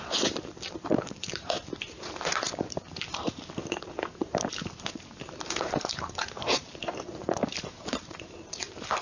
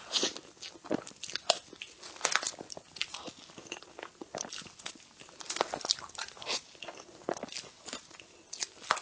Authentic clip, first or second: second